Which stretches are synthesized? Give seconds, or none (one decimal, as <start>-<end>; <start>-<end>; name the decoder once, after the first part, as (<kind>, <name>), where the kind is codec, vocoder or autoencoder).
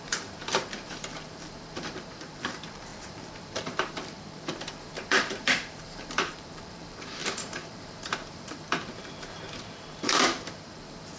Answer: 0.0-11.2 (vocoder, BigVGAN v2)